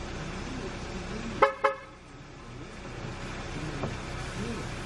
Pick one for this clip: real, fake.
real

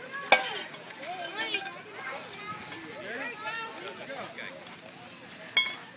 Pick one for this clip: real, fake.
real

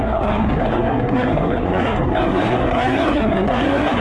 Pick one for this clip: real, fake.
fake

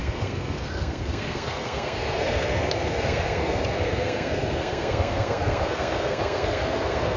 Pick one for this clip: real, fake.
fake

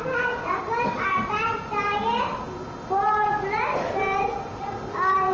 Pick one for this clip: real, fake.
real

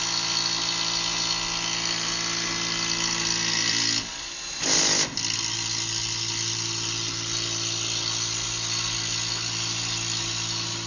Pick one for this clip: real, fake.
real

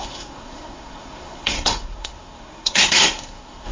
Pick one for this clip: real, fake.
fake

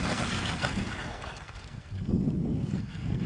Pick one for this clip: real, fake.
fake